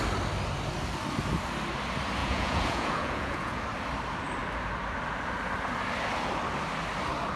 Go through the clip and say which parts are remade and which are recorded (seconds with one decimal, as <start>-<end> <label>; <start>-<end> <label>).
0.0-2.2 recorded; 2.2-3.6 remade; 3.6-7.4 recorded